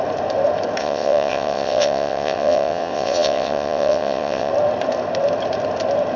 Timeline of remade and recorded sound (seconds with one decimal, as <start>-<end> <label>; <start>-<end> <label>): 0.0-0.8 recorded; 0.8-4.5 remade; 4.5-6.2 recorded

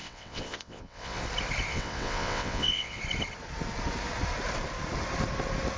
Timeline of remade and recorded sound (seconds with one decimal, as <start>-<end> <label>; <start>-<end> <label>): 0.0-1.2 remade; 1.2-1.7 recorded; 1.7-3.0 remade; 3.0-5.8 recorded

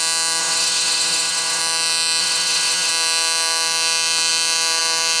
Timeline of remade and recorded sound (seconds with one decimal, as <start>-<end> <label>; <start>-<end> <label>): 0.0-0.4 recorded; 0.4-1.6 remade; 1.6-2.2 recorded; 2.2-2.9 remade; 2.9-5.2 recorded

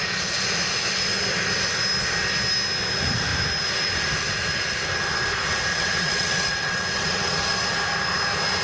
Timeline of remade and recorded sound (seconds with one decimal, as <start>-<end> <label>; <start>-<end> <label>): 0.0-5.7 recorded; 5.7-7.4 remade; 7.4-8.6 recorded

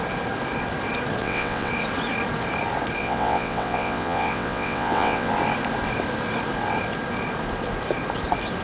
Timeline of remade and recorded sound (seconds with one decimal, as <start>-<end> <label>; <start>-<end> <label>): 0.0-1.2 recorded; 1.2-1.7 remade; 1.7-3.0 recorded; 3.0-5.3 remade; 5.3-8.6 recorded

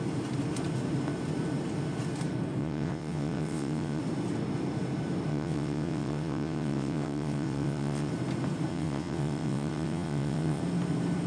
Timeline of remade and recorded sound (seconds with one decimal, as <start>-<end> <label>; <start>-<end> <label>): 0.0-2.6 recorded; 2.6-4.0 remade; 4.0-5.3 recorded; 5.3-8.1 remade; 8.1-8.7 recorded; 8.7-10.6 remade; 10.6-11.3 recorded

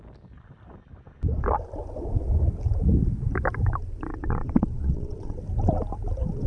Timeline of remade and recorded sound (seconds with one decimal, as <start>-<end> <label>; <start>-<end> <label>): 0.0-4.1 recorded; 4.1-5.4 remade; 5.4-6.5 recorded

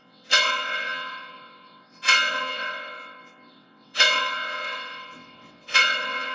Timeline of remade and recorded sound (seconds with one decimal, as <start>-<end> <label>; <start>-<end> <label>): 0.0-6.3 remade